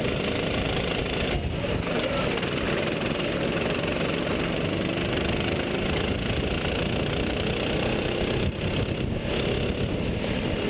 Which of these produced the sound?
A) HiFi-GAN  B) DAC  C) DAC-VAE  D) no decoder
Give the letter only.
D